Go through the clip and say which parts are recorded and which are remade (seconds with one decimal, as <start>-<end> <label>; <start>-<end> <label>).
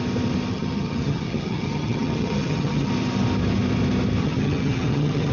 0.0-0.5 recorded; 0.5-2.9 remade; 2.9-4.2 recorded; 4.2-5.3 remade